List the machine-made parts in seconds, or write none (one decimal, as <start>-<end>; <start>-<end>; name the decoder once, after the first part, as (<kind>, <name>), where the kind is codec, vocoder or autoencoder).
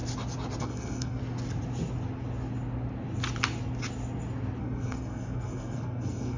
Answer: 0.6-1.2 (codec, SNAC); 4.6-6.4